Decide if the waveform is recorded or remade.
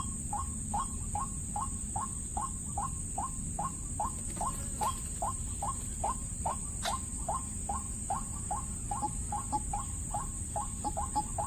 recorded